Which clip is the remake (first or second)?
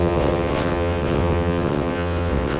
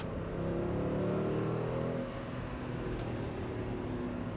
first